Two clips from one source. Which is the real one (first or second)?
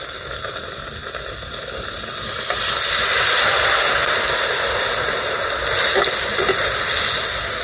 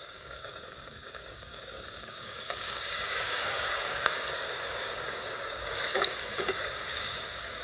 first